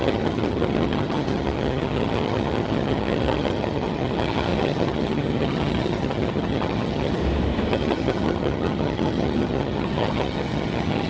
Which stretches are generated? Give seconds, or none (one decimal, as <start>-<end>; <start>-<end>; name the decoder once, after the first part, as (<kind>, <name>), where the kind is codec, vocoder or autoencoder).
0.0-7.2 (vocoder, HiFi-GAN); 7.7-11.1